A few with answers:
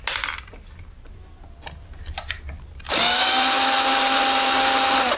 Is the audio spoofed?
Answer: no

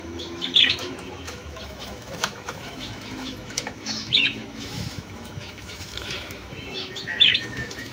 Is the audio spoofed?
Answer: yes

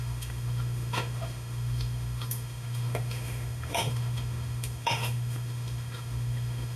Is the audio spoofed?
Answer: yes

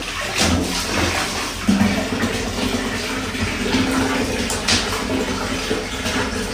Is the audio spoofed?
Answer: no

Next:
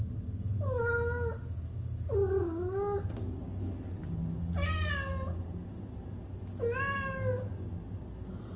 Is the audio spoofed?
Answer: no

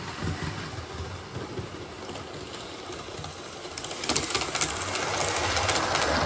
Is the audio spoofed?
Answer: no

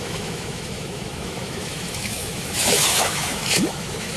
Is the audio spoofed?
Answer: yes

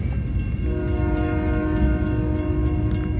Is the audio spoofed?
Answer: no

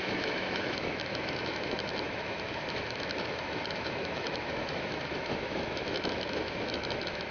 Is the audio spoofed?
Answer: yes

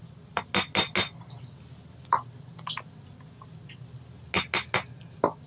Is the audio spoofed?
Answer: no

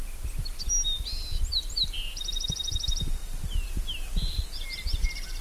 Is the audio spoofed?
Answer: no